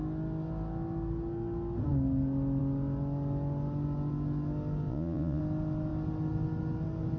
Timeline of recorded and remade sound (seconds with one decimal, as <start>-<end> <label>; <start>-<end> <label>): 0.0-4.9 recorded; 4.9-5.4 remade; 5.4-7.2 recorded